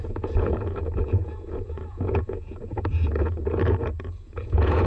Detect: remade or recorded remade